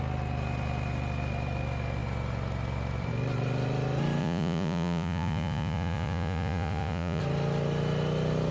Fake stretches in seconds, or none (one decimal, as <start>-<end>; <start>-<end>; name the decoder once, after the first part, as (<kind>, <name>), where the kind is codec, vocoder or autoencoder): 4.2-7.2 (vocoder, Vocos)